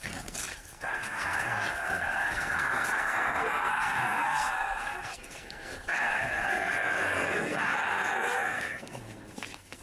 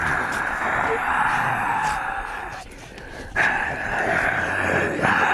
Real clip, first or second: second